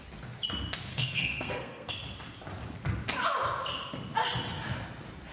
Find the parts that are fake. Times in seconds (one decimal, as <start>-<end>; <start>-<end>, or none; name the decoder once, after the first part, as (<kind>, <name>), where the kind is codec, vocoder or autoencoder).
0.9-1.9 (codec, SNAC)